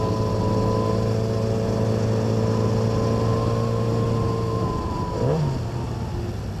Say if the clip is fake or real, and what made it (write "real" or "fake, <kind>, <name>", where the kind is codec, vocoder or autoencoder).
real